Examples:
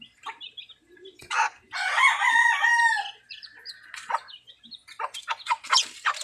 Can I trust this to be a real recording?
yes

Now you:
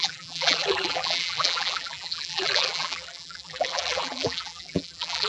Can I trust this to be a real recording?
no